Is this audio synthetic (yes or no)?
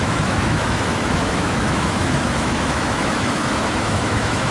yes